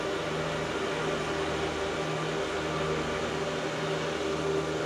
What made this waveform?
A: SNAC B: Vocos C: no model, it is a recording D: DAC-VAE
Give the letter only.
C